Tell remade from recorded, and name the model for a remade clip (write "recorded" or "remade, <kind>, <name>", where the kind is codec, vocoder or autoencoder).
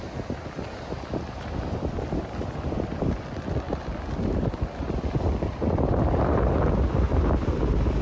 recorded